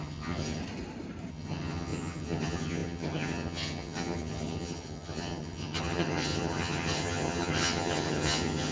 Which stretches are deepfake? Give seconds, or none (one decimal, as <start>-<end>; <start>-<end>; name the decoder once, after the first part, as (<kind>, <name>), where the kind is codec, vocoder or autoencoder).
0.0-0.6 (vocoder, HiFi-GAN); 1.3-8.7

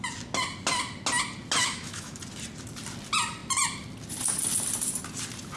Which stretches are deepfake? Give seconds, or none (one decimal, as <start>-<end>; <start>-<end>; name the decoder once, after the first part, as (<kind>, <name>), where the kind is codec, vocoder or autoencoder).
1.6-2.2 (autoencoder, DAC-VAE)

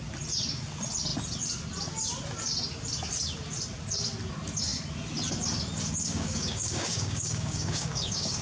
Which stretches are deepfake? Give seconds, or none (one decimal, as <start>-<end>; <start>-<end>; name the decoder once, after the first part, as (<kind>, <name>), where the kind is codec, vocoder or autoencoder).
6.0-8.4 (codec, DAC)

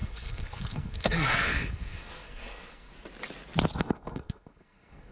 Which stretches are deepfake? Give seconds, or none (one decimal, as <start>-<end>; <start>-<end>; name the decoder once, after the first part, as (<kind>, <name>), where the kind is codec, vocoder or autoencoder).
0.0-2.9 (codec, SNAC); 3.8-5.1

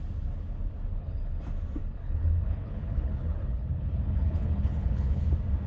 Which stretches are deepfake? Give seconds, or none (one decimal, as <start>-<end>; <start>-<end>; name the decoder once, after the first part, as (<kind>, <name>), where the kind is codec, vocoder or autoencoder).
0.9-1.4 (codec, HILCodec); 1.8-5.2

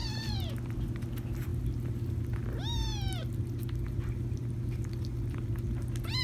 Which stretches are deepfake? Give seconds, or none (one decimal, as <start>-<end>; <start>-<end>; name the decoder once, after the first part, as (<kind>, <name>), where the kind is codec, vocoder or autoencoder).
0.0-0.5 (vocoder, BigVGAN v2)